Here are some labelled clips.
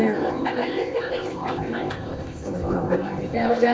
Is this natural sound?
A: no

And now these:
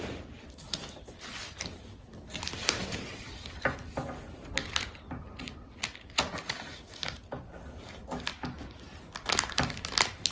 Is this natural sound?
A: yes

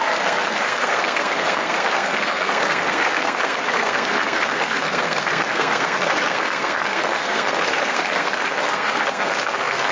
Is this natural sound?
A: no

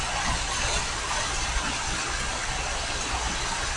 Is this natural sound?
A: yes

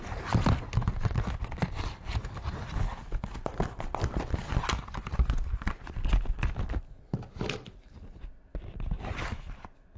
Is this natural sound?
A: yes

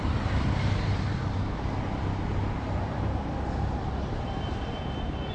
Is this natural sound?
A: yes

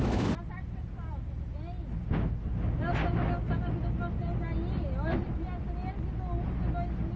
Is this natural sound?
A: yes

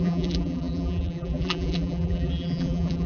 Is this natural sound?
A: no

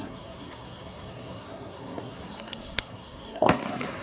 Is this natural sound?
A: no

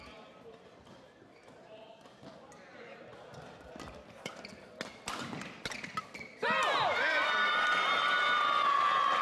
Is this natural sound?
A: yes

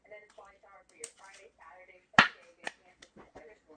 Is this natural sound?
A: yes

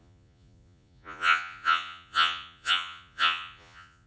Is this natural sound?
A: no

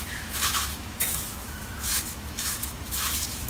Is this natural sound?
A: no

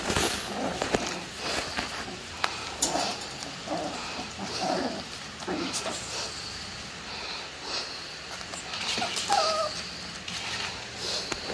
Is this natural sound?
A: yes